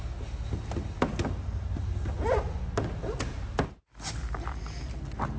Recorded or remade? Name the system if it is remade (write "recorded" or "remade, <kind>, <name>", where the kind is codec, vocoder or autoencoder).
recorded